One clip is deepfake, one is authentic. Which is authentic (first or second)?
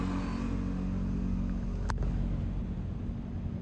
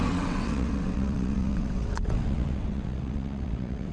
first